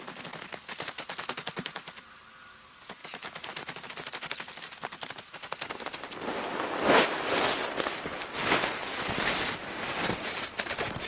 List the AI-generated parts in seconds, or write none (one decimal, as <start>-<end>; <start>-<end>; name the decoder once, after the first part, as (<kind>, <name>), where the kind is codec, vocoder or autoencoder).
none